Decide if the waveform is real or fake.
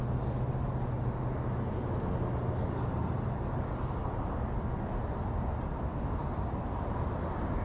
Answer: real